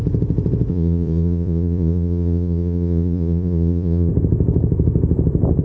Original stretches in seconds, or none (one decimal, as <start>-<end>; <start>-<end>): 0.0-0.7; 4.1-5.6